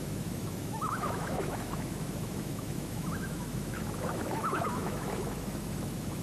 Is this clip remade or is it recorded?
remade